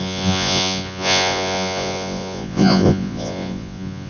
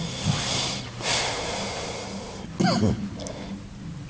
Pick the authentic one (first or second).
second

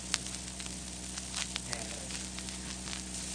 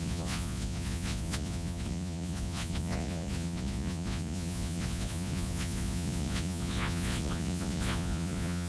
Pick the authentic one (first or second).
first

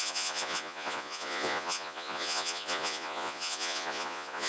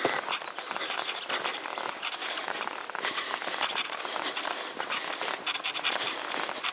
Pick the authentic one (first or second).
second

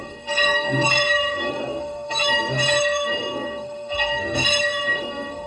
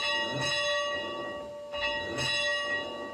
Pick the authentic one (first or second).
second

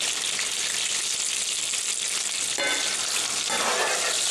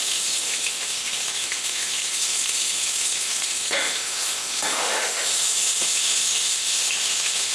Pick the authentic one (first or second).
first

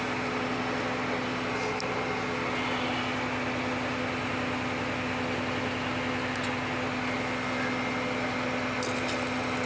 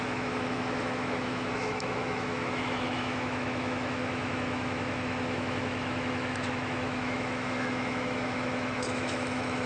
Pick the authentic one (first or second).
first